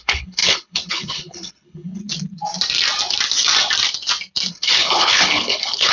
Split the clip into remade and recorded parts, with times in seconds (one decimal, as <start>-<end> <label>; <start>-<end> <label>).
0.0-2.0 remade; 2.0-4.5 recorded; 4.5-5.9 remade